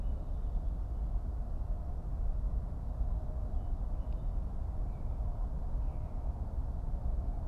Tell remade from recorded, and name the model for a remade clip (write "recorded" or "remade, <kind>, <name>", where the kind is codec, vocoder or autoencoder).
recorded